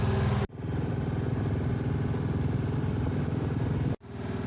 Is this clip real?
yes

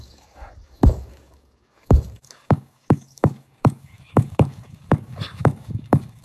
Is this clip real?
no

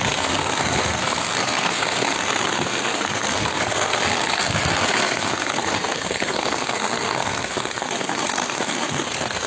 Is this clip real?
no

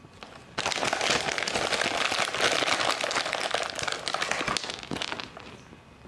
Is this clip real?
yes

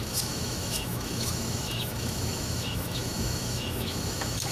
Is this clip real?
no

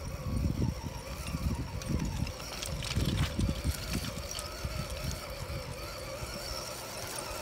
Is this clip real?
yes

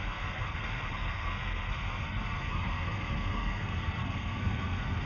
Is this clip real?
no